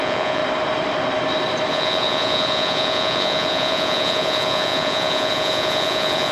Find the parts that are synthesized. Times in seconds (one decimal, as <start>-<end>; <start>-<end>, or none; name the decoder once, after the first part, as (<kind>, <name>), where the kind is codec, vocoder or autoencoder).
0.0-0.4 (vocoder, Vocos); 1.7-6.3